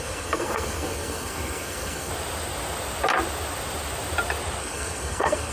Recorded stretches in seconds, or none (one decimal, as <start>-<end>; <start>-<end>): 2.1-4.6

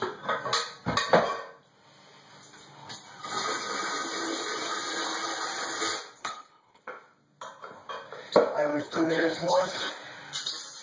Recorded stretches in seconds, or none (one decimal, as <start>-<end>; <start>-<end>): 0.0-6.2; 6.8-8.7; 9.9-10.8

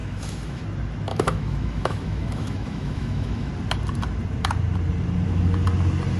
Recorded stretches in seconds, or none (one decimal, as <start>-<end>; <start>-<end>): 0.6-1.1; 3.5-6.2